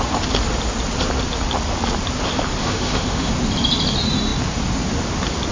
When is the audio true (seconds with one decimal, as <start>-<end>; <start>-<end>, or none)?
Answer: 0.0-2.6; 3.3-5.5